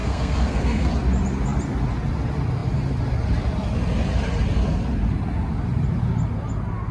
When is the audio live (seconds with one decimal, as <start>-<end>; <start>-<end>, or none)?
0.9-6.9